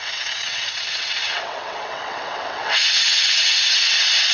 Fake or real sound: fake